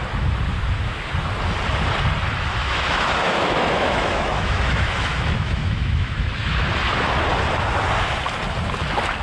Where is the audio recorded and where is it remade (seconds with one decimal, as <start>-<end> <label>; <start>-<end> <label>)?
0.0-2.6 recorded; 2.6-6.7 remade; 6.7-9.2 recorded